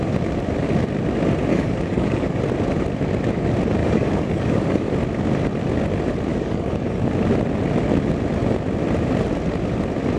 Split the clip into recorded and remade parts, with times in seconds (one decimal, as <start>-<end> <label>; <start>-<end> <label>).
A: 0.0-1.5 recorded; 1.5-2.4 remade; 2.4-3.8 recorded; 3.8-4.9 remade; 4.9-6.3 recorded; 6.3-7.1 remade; 7.1-10.2 recorded